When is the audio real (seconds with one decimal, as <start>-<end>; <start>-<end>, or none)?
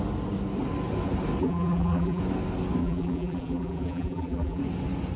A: 0.0-1.4; 2.2-2.8; 4.6-5.2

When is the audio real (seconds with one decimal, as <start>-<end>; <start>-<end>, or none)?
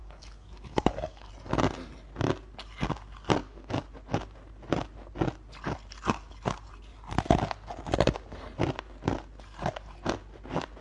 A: 1.3-3.4; 3.9-10.8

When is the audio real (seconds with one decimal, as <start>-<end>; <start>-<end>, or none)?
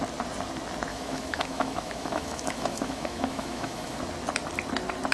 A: 0.0-0.9; 4.0-5.1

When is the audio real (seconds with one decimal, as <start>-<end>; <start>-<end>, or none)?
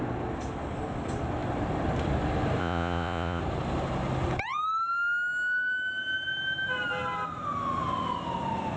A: 0.0-2.6; 3.4-8.8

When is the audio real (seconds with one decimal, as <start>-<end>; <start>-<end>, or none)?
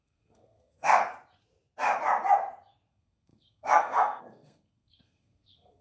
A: 1.0-2.9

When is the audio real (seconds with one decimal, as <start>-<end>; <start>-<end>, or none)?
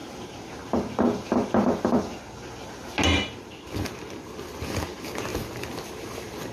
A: 0.0-6.5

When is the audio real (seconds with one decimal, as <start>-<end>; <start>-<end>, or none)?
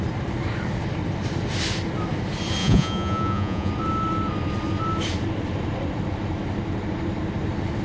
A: 0.0-2.6; 3.7-7.8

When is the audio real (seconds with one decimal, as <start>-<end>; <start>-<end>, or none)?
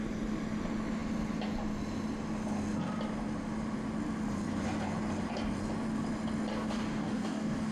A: 0.0-6.5